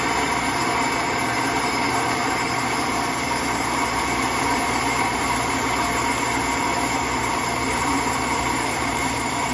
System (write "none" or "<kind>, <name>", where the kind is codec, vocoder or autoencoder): vocoder, BigVGAN v2